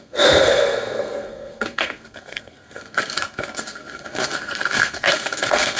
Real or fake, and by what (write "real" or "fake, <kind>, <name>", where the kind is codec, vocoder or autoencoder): fake, codec, SNAC